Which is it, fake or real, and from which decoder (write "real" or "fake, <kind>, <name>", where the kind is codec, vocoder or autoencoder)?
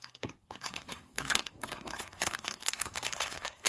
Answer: fake, codec, SNAC